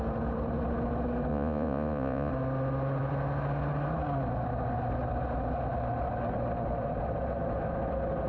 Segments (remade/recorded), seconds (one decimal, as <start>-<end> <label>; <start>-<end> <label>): 0.0-1.3 recorded; 1.3-2.3 remade; 2.3-8.3 recorded